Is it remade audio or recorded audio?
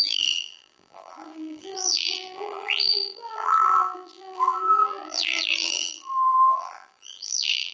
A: remade